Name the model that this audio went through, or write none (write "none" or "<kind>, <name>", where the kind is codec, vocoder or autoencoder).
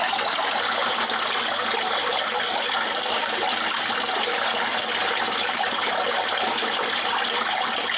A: none